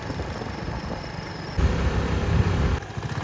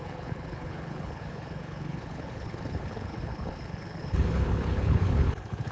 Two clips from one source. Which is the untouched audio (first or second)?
first